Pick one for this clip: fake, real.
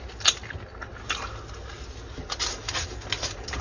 real